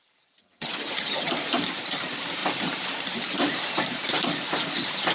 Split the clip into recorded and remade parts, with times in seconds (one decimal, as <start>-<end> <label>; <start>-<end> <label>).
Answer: 0.0-0.4 recorded; 0.4-1.3 remade; 1.3-5.1 recorded